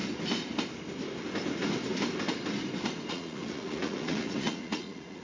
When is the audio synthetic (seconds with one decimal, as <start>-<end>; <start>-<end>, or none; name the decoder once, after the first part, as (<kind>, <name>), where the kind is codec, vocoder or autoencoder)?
3.1-5.2 (vocoder, Vocos)